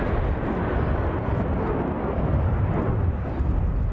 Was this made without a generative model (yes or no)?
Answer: yes